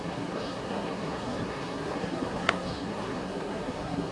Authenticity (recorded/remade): remade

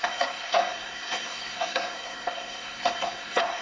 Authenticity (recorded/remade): remade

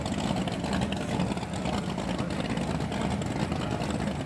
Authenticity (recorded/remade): recorded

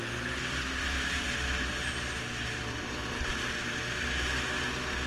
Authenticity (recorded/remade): recorded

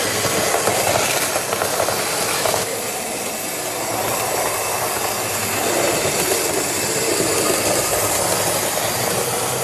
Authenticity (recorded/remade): recorded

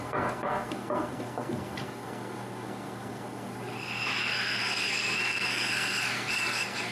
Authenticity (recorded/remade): remade